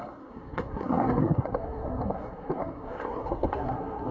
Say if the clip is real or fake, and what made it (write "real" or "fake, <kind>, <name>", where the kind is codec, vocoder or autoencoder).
fake, codec, SNAC